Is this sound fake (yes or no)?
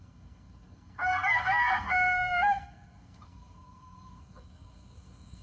yes